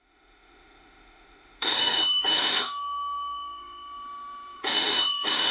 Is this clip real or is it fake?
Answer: fake